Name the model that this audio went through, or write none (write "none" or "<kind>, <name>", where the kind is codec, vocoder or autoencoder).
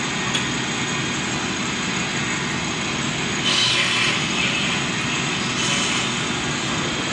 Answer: none